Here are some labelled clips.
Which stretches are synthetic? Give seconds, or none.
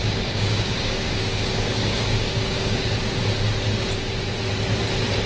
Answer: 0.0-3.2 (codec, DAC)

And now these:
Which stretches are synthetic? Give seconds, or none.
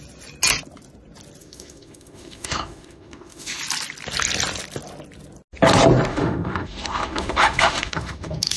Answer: 1.4-3.6 (autoencoder, DAC-VAE); 6.1-8.6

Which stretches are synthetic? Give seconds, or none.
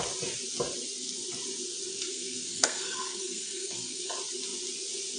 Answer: 1.9-4.1 (codec, SNAC)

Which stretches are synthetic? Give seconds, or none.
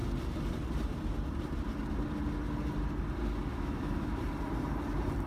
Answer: 3.5-4.2 (autoencoder, DAC-VAE)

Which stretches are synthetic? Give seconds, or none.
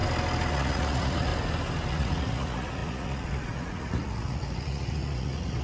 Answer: 0.5-1.3 (vocoder, Vocos); 1.9-5.6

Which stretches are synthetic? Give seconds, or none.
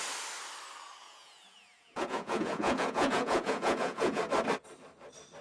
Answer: 1.0-4.2 (vocoder, Vocos)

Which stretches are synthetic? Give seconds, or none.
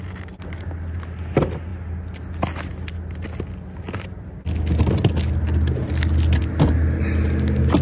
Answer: none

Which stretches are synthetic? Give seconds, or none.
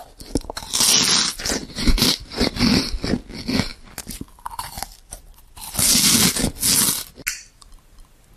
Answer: 1.6-2.5 (vocoder, BigVGAN v2)